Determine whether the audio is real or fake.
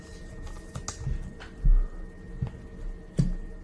real